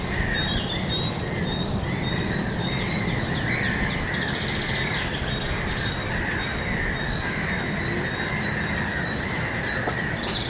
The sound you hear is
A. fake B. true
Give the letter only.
B